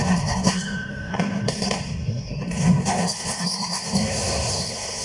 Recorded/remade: remade